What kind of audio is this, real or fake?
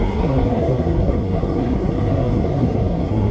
fake